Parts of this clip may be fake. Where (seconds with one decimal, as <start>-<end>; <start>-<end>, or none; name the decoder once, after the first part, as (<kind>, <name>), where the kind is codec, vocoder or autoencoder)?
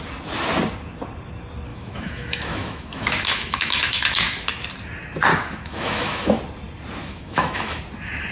1.7-4.6 (autoencoder, DAC-VAE); 5.3-6.4; 7.0-7.8